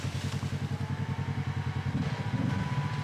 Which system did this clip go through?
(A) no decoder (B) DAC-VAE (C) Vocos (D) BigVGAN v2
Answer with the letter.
A